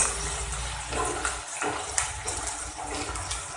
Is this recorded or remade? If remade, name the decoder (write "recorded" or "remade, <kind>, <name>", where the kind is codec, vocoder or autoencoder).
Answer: recorded